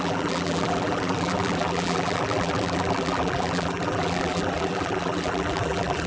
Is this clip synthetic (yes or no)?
yes